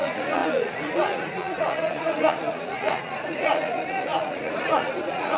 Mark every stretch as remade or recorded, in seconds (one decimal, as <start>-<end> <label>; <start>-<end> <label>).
0.0-5.4 remade